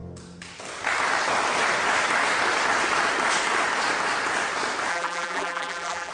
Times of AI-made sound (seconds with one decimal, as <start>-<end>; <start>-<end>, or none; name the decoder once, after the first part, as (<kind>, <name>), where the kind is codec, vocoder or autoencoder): 4.9-6.1 (vocoder, BigVGAN v2)

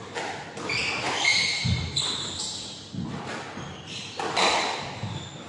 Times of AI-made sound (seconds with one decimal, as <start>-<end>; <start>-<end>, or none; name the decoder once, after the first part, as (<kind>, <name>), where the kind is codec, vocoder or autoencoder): none

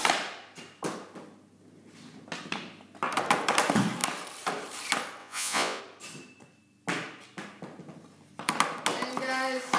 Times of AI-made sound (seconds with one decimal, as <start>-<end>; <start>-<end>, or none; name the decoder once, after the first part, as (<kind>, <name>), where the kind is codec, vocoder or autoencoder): 5.2-5.8 (vocoder, Vocos)

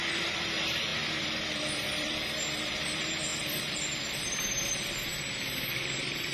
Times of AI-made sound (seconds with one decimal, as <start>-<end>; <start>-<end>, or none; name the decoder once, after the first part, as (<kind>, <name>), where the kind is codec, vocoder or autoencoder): 0.0-5.1 (vocoder, BigVGAN v2); 5.7-6.3

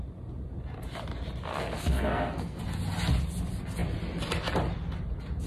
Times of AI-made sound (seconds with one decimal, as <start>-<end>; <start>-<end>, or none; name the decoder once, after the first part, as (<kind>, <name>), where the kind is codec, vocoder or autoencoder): 1.5-2.6 (codec, SNAC)